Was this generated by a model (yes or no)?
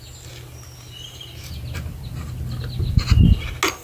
no